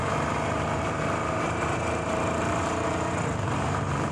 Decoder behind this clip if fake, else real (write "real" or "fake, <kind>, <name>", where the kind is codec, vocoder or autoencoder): fake, vocoder, BigVGAN v2